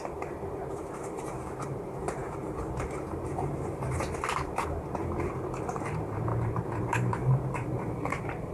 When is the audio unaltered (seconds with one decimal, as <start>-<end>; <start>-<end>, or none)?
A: none

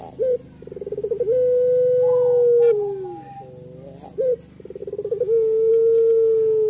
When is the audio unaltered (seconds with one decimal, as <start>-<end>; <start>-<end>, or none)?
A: 0.0-6.7

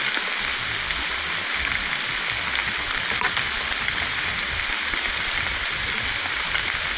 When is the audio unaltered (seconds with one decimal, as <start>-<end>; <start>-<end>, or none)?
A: 0.0-2.6; 5.5-7.0

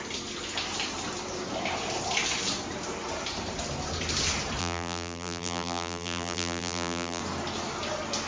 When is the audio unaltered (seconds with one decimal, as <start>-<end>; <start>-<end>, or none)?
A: 0.0-4.6; 7.2-8.3

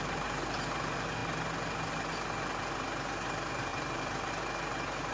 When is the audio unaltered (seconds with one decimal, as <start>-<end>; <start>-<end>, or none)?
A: 0.0-3.7; 4.3-5.1

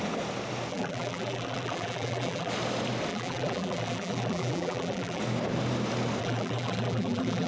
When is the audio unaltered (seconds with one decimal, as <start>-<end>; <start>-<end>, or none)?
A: 0.0-0.7; 2.5-3.1; 5.2-6.2